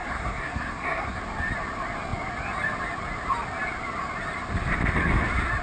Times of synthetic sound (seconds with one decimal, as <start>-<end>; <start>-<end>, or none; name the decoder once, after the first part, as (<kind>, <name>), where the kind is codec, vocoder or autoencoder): 0.0-1.2 (codec, SNAC)